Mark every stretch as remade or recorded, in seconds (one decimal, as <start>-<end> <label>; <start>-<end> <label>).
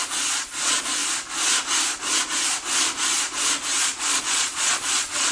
0.0-1.0 remade; 1.0-4.2 recorded; 4.2-5.3 remade